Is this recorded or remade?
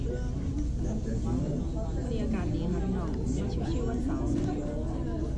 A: recorded